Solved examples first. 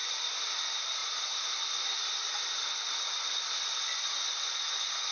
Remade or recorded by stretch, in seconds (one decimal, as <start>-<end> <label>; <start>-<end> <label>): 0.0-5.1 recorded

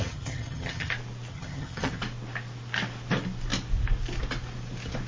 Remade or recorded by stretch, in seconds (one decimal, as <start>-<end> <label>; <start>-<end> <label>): 0.0-0.9 remade; 0.9-1.3 recorded; 1.3-2.0 remade; 2.0-5.1 recorded

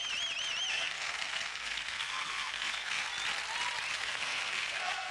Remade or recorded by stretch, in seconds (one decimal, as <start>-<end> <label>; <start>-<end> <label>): 0.0-0.7 recorded; 0.7-3.1 remade; 3.1-3.9 recorded; 3.9-5.1 remade

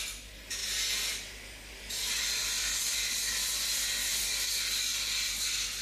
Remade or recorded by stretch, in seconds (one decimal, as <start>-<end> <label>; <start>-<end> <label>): 0.0-5.8 recorded

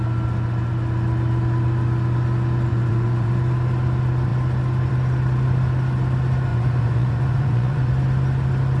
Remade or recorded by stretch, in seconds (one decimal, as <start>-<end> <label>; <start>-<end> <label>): 0.0-2.7 recorded; 2.7-3.3 remade; 3.3-6.5 recorded; 6.5-7.9 remade; 7.9-8.8 recorded

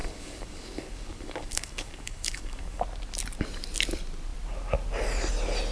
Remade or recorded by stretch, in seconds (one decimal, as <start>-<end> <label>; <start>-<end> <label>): 0.0-2.8 remade; 2.8-5.7 recorded

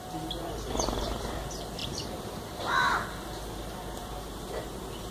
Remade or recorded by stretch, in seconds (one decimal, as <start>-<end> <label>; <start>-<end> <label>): 0.0-1.8 recorded; 1.8-2.6 remade; 2.6-5.1 recorded

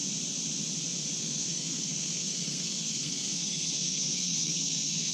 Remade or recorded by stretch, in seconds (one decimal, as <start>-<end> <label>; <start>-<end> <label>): 0.0-1.2 recorded; 1.2-5.1 remade